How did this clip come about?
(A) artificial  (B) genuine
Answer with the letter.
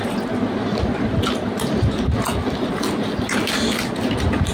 B